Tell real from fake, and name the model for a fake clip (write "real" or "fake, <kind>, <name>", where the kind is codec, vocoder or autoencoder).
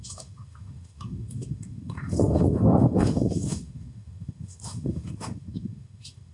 fake, autoencoder, DAC-VAE